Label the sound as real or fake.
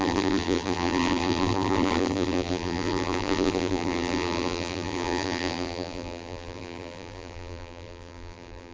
fake